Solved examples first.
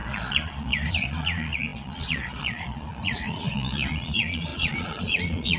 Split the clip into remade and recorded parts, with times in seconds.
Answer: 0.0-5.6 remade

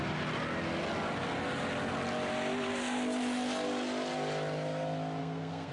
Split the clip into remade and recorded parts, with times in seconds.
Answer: 0.0-5.2 recorded; 5.2-5.7 remade

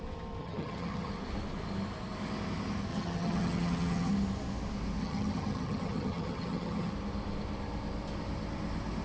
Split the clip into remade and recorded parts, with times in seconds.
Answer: 0.0-0.4 recorded; 0.4-1.1 remade; 1.1-2.9 recorded; 2.9-4.1 remade; 4.1-5.0 recorded; 5.0-6.9 remade; 6.9-9.0 recorded